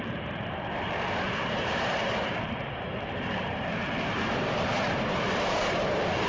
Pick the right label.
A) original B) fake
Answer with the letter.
B